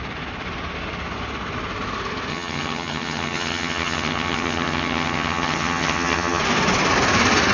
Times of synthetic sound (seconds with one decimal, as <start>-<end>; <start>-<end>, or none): 2.3-6.4